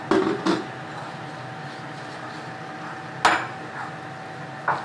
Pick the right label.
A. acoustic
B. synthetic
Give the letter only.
A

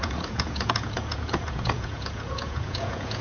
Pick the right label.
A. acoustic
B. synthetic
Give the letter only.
B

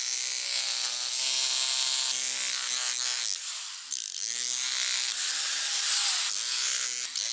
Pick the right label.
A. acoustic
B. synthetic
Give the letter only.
A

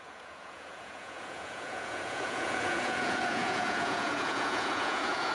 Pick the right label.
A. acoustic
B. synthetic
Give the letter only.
B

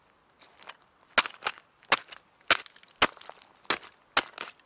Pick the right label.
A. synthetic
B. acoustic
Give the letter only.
B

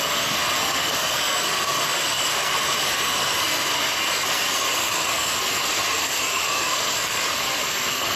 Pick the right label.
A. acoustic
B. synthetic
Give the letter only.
B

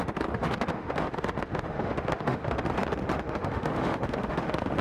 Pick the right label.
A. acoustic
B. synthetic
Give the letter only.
B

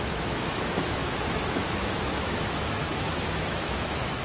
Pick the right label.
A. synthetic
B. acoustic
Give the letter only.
A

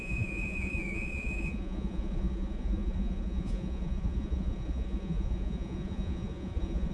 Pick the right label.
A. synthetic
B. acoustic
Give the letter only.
A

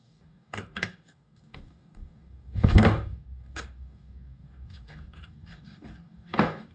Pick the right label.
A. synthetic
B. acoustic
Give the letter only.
A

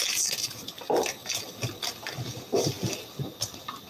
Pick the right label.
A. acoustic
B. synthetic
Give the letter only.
A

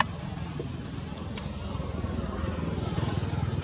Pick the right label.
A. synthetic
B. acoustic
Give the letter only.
B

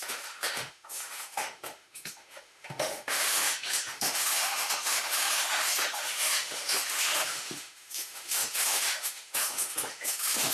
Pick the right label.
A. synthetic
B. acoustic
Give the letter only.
A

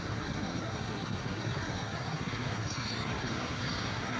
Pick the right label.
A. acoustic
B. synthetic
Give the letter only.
B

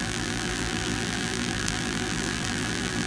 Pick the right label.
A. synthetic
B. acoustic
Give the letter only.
A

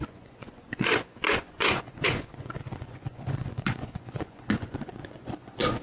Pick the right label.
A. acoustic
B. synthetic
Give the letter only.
B